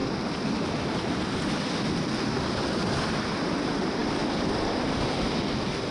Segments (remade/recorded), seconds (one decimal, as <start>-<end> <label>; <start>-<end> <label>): 0.0-5.9 recorded